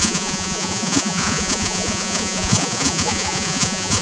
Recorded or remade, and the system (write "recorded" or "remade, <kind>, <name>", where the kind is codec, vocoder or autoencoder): remade, vocoder, Vocos